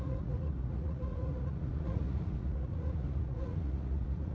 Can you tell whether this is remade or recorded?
remade